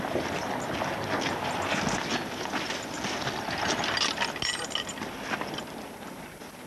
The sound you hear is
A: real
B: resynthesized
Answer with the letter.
A